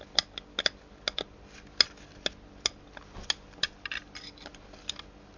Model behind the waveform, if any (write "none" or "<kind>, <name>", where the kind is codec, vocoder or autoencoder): none